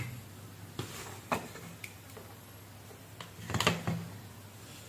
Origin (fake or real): real